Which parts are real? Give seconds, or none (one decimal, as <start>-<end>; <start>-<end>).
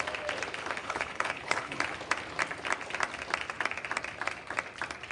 0.0-0.8; 1.8-5.1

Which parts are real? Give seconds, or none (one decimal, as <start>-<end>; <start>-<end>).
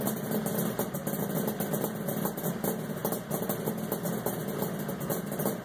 0.0-5.6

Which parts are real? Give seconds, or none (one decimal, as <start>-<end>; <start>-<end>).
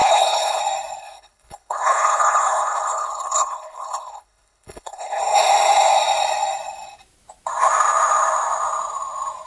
0.6-1.0; 5.2-9.5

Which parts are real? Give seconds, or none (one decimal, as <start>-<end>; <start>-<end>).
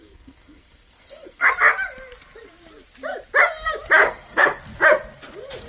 1.5-4.0; 4.6-5.7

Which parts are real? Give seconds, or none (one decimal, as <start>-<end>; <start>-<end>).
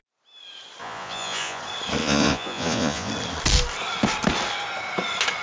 0.0-0.8; 1.6-2.0; 3.1-5.4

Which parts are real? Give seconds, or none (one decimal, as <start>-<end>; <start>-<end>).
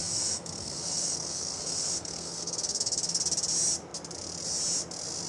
3.2-5.3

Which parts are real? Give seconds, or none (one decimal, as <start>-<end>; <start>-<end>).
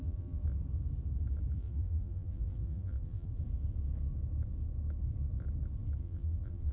0.4-1.5; 3.3-6.0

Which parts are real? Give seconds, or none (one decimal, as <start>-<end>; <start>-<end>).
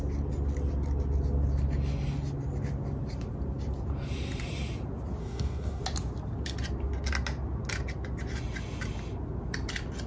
0.0-5.2; 5.8-10.1